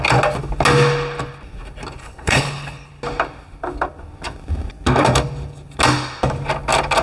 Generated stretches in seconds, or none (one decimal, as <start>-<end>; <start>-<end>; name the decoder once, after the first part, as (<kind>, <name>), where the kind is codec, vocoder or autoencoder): 2.0-2.9 (codec, HILCodec)